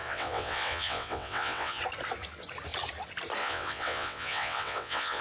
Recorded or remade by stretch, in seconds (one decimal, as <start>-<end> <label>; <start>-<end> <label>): 0.0-1.8 remade; 1.8-3.4 recorded; 3.4-5.2 remade